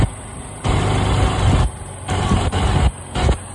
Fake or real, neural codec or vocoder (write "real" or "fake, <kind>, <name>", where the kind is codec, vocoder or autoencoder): real